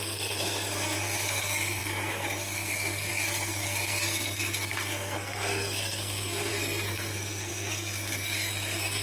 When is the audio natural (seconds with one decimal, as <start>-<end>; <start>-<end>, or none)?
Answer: none